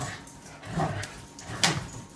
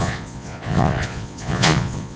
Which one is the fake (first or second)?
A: second